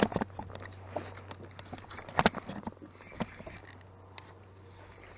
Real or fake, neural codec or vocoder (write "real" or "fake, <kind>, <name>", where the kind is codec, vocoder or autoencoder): real